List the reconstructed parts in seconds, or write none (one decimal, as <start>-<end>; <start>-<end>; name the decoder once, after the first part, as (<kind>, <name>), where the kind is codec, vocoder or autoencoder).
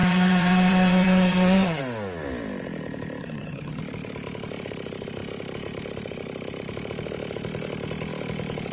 0.0-1.8 (vocoder, HiFi-GAN); 3.2-3.8